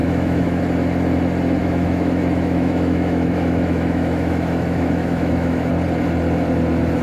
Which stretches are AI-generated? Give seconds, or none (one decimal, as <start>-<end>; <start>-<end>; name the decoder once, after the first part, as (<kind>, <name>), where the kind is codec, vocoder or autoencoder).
0.0-0.6 (autoencoder, DAC-VAE); 1.6-5.7